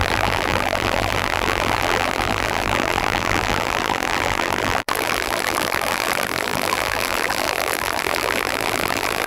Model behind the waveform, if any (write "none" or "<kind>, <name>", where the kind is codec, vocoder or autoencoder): vocoder, BigVGAN v2